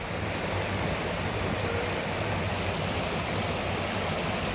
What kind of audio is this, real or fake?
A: real